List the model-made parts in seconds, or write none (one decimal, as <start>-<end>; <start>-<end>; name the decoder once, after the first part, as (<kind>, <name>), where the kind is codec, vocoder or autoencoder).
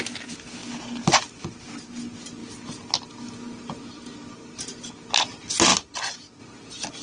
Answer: none